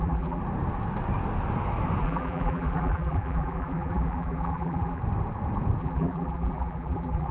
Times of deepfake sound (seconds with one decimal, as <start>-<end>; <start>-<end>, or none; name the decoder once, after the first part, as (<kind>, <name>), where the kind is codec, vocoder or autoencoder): 0.0-0.4 (vocoder, BigVGAN v2); 2.0-5.0; 5.8-7.3